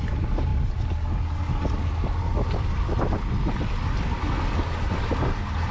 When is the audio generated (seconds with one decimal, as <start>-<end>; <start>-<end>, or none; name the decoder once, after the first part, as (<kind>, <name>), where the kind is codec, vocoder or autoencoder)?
none